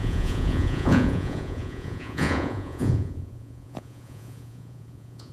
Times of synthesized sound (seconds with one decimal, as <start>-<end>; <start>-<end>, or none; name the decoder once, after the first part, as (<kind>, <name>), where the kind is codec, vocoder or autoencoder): 0.0-5.3 (vocoder, Vocos)